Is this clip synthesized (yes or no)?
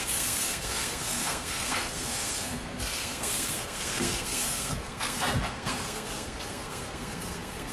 yes